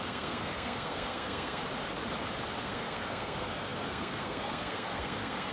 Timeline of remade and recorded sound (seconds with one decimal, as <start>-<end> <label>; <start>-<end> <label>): 0.0-1.6 remade; 1.6-2.6 recorded; 2.6-5.5 remade